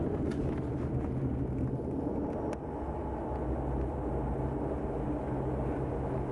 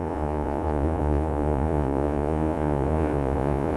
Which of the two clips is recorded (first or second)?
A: first